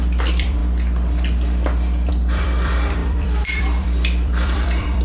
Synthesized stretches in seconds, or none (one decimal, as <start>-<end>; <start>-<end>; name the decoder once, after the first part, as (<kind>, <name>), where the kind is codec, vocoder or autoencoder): 0.0-0.6 (vocoder, BigVGAN v2); 2.1-5.0